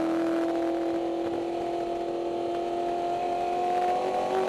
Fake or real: real